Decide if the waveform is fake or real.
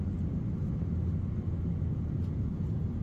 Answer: real